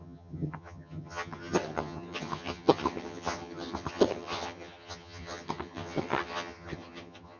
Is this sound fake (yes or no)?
yes